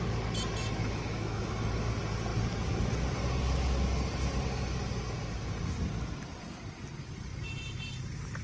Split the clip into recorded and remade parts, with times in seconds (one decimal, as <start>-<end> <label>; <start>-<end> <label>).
0.0-0.8 recorded; 0.8-1.9 remade; 1.9-8.4 recorded